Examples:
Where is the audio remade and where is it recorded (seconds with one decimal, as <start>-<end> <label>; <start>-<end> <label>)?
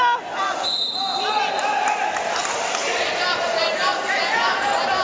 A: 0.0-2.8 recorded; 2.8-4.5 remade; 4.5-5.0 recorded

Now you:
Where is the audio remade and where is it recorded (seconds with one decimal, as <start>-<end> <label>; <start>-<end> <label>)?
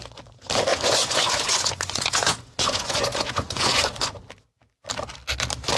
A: 0.0-0.7 recorded; 0.7-4.2 remade; 4.2-5.8 recorded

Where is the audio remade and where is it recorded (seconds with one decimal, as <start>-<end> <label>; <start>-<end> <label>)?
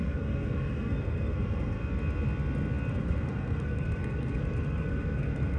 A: 0.0-1.8 remade; 1.8-2.9 recorded; 2.9-5.6 remade